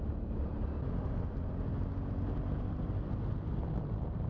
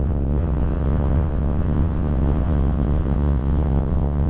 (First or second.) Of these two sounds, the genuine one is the first